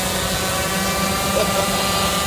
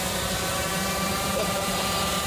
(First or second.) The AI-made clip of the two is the second